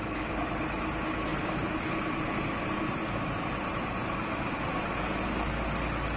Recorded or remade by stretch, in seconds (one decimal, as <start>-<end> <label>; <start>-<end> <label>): 0.0-1.3 recorded; 1.3-5.0 remade; 5.0-6.2 recorded